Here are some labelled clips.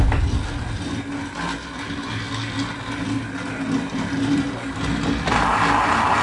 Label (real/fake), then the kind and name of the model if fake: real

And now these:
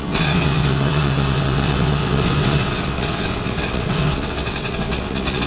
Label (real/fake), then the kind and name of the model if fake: fake, vocoder, WaveNeXt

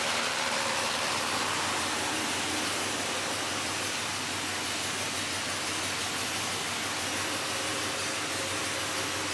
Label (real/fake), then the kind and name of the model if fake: real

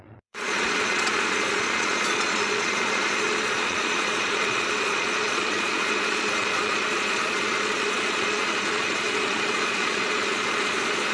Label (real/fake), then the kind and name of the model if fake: fake, vocoder, Vocos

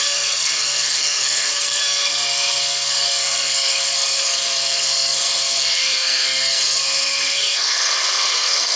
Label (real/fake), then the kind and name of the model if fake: fake, codec, SNAC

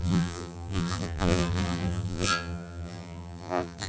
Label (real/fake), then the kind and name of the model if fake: fake, vocoder, BigVGAN v2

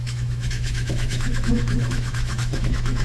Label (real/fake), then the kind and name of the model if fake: fake, autoencoder, DAC-VAE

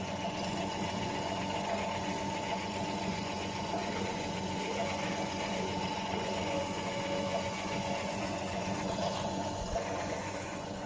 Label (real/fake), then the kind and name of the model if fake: fake, vocoder, Vocos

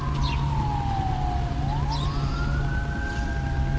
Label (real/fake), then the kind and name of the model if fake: real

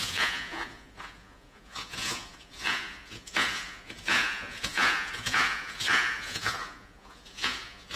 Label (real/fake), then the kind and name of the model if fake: fake, vocoder, Vocos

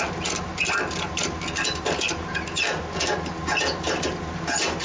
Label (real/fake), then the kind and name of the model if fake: real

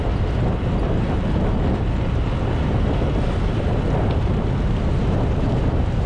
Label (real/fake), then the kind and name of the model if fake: real